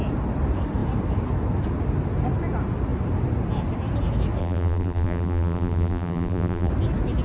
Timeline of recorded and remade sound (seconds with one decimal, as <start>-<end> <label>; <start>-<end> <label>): 0.0-4.4 recorded; 4.4-6.7 remade; 6.7-7.2 recorded